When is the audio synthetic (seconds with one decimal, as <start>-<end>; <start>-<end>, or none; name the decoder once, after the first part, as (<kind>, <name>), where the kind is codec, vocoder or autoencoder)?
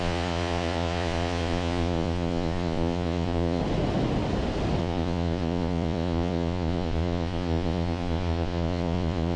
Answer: 0.0-3.6 (vocoder, Vocos); 4.8-9.4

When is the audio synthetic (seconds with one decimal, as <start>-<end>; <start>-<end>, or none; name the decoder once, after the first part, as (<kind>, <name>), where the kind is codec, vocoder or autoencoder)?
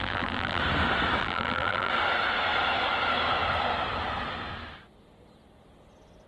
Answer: 0.0-0.6 (vocoder, BigVGAN v2); 1.2-1.9